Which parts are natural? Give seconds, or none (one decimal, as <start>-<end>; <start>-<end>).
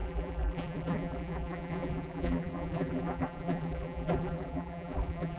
none